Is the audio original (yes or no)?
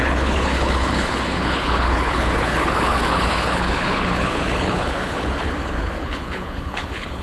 no